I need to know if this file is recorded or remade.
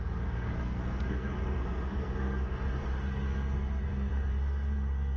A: remade